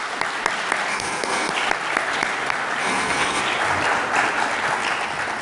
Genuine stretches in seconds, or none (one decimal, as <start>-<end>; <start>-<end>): 0.0-0.9; 1.5-2.8; 3.4-5.4